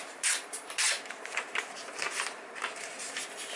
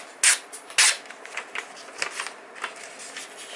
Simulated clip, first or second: first